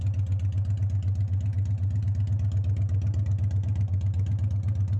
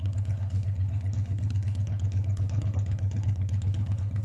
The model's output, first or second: second